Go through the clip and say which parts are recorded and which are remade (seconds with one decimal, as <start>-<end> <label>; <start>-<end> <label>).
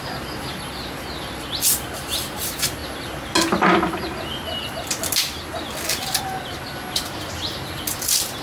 0.0-8.4 recorded